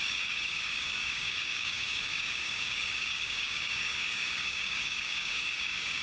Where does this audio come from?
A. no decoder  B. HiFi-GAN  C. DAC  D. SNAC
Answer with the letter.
C